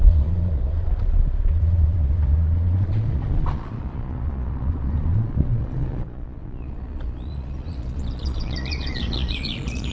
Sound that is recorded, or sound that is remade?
remade